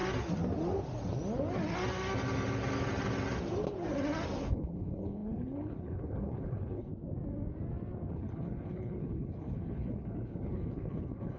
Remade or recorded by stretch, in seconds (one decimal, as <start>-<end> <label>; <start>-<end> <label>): 0.0-4.4 recorded; 4.4-6.9 remade; 6.9-8.1 recorded; 8.1-11.4 remade